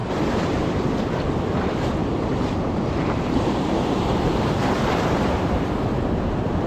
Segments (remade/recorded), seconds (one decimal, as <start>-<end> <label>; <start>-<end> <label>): 0.0-0.6 remade; 0.6-2.0 recorded; 2.0-5.7 remade; 5.7-6.7 recorded